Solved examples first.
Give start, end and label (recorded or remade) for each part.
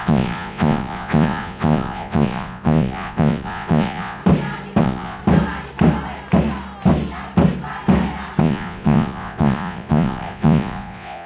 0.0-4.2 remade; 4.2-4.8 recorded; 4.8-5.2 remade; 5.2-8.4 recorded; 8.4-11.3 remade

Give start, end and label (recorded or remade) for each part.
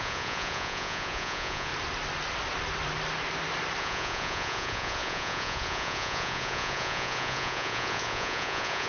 0.0-1.7 remade; 1.7-3.8 recorded; 3.8-8.9 remade